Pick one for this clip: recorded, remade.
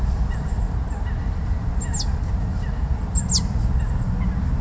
recorded